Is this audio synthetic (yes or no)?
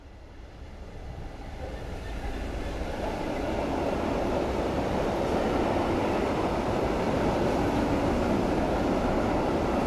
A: no